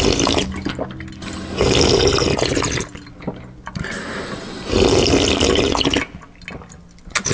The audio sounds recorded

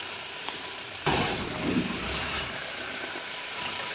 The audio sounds remade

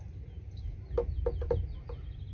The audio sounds recorded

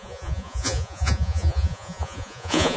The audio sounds remade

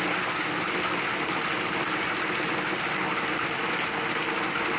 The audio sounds recorded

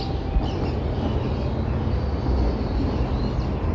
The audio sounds recorded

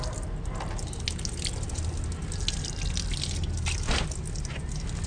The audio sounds recorded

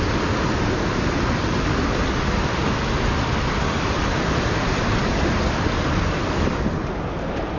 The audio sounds recorded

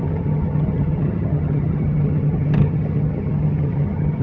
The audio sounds remade